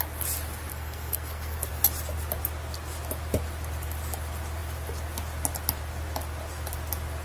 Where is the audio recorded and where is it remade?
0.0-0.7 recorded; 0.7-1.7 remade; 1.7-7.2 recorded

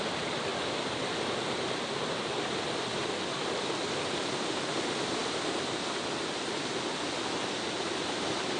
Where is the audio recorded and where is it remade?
0.0-8.6 recorded

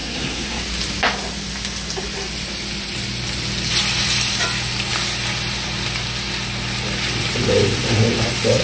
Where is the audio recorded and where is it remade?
0.0-0.6 remade; 0.6-8.6 recorded

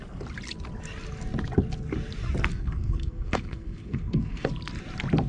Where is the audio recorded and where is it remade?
0.0-2.5 recorded; 2.5-4.5 remade; 4.5-5.3 recorded

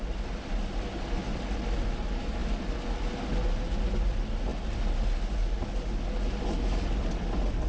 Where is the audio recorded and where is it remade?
0.0-7.7 recorded